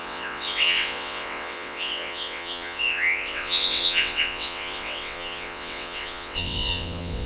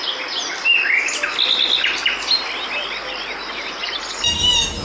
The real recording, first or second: second